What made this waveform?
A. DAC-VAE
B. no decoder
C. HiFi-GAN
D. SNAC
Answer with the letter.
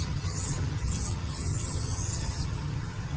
C